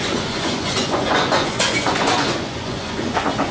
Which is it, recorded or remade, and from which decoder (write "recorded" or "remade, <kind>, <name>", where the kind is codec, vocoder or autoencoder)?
remade, vocoder, Vocos